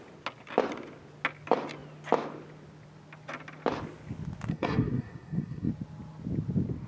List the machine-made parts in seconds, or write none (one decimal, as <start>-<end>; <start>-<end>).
4.5-5.7